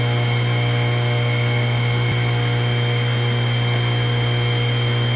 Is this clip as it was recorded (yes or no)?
yes